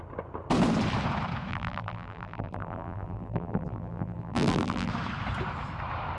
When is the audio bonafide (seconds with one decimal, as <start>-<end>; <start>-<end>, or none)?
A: 0.0-1.5; 4.9-6.2